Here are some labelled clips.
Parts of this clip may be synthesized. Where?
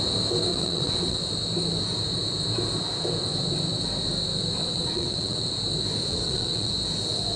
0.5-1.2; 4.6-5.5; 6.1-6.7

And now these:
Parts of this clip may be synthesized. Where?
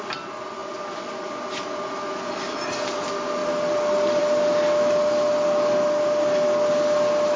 none